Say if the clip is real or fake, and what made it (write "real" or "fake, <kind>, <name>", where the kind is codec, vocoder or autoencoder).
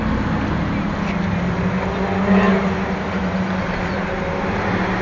real